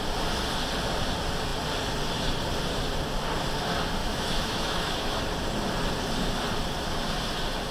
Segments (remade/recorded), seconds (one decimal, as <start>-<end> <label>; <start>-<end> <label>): 0.0-4.0 recorded; 4.0-5.2 remade; 5.2-7.7 recorded